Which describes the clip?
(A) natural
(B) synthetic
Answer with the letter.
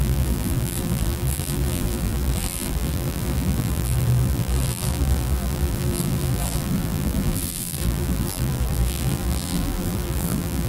B